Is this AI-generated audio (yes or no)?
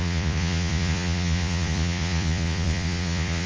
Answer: yes